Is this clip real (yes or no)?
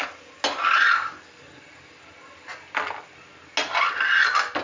yes